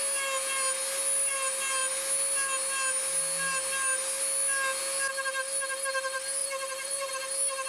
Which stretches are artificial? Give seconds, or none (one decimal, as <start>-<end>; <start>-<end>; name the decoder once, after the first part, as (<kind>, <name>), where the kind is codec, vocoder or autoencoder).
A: 6.4-7.1 (vocoder, BigVGAN v2)

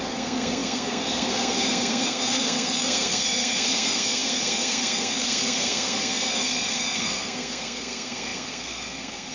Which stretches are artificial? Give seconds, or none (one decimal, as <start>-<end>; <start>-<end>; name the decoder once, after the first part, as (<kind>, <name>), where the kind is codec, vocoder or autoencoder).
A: 0.0-9.3 (codec, SNAC)

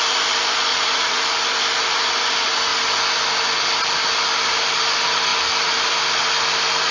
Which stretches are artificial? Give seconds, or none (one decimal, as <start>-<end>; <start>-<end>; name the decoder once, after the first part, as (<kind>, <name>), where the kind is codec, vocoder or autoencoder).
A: 0.7-1.2 (vocoder, Vocos)

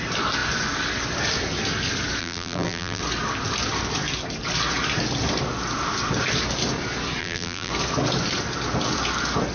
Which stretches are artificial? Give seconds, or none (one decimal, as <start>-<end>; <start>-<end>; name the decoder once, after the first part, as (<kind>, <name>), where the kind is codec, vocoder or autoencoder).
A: 2.2-3.0 (vocoder, BigVGAN v2); 7.2-7.7

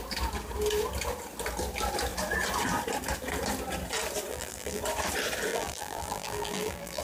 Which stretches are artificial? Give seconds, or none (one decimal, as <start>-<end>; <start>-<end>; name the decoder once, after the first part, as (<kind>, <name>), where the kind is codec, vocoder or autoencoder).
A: 4.3-4.8 (vocoder, BigVGAN v2); 5.5-7.0

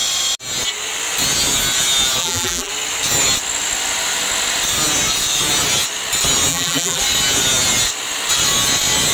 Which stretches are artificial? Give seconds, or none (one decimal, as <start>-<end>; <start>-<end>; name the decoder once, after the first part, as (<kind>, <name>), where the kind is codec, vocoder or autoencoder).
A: 2.2-2.7 (vocoder, BigVGAN v2); 6.5-7.0

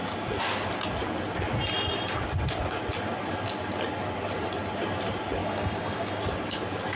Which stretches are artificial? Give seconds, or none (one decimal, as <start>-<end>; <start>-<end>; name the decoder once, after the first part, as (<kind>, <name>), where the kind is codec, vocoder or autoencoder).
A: 5.4-6.2 (codec, DAC)

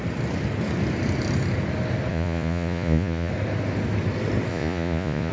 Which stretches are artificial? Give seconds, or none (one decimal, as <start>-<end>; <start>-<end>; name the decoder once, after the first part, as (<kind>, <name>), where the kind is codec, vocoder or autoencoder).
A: 2.1-3.3 (vocoder, Vocos); 4.5-5.3